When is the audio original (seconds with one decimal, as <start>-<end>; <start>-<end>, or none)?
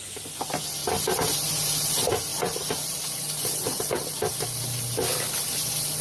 0.0-0.8; 1.5-2.3; 4.3-6.0